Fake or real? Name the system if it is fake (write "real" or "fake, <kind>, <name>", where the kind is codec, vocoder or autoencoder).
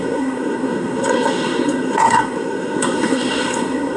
fake, codec, SNAC